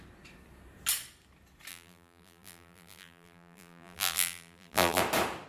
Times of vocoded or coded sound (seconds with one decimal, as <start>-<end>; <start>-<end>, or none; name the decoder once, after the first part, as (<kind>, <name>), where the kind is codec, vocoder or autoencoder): 1.7-5.0 (vocoder, BigVGAN v2)